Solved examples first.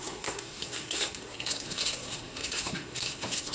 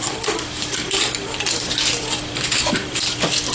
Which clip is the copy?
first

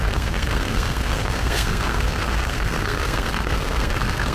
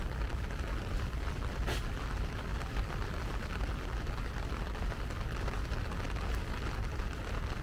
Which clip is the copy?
first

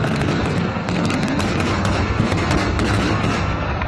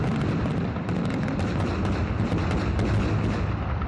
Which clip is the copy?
first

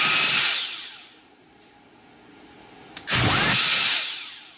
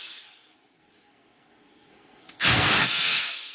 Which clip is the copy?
second